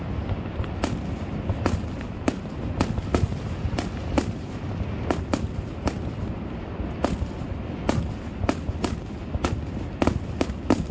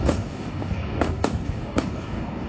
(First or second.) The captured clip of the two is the first